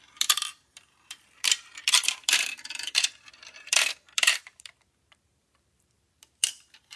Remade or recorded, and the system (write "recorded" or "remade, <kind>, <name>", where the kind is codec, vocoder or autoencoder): remade, vocoder, BigVGAN v2